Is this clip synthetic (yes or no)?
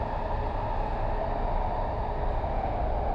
no